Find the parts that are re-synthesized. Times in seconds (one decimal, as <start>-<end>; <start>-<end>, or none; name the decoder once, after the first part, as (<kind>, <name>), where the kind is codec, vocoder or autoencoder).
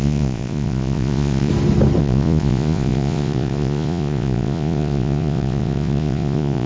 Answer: 0.0-1.5 (vocoder, Vocos); 2.0-6.7